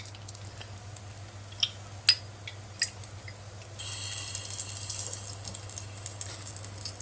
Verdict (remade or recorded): recorded